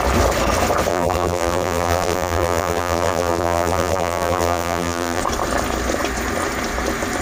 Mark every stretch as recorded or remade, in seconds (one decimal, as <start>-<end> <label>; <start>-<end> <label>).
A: 0.0-0.9 recorded; 0.9-5.2 remade; 5.2-7.2 recorded